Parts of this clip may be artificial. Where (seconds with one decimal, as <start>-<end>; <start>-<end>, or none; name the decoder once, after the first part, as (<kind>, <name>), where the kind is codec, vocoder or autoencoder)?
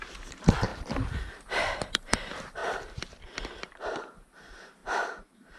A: 0.0-0.7 (vocoder, BigVGAN v2); 1.3-5.6